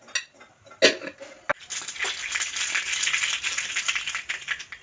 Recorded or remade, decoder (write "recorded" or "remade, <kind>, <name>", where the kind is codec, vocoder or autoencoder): recorded